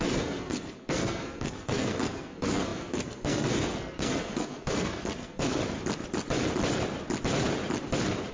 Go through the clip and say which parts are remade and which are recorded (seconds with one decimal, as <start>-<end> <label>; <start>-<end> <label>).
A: 0.0-5.6 remade; 5.6-8.3 recorded

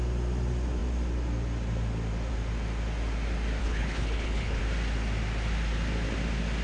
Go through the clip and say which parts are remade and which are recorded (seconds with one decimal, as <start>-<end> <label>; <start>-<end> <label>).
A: 0.0-3.6 recorded; 3.6-4.6 remade; 4.6-6.6 recorded